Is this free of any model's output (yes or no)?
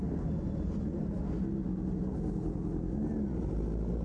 yes